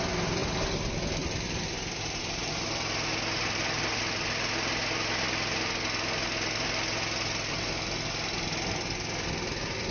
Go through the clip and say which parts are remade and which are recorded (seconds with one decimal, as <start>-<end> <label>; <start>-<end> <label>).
0.0-9.9 recorded

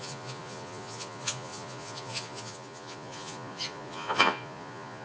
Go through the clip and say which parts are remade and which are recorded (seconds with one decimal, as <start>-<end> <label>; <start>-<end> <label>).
0.0-5.0 remade

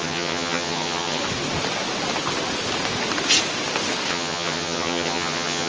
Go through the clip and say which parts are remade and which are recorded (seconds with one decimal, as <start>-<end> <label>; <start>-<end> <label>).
0.0-1.2 remade; 1.2-4.1 recorded; 4.1-5.7 remade

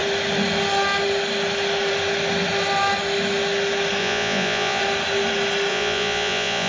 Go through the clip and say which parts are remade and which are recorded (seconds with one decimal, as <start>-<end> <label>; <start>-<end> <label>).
0.0-4.0 recorded; 4.0-4.8 remade; 4.8-5.7 recorded; 5.7-6.7 remade